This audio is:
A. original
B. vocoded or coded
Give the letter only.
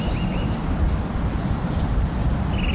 A